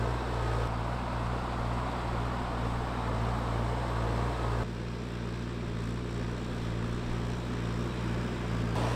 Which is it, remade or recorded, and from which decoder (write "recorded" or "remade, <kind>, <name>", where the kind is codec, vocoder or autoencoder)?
recorded